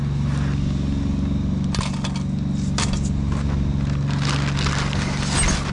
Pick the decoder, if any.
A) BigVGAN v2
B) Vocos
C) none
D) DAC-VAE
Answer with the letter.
C